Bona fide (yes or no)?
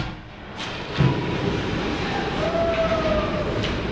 yes